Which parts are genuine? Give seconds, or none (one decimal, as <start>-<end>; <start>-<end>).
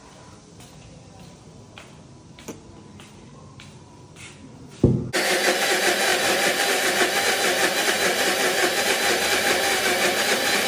0.0-6.1; 6.9-8.6; 9.8-10.7